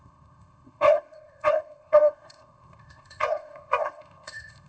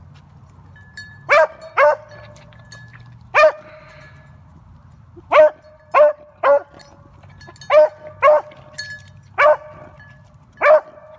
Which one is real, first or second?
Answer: second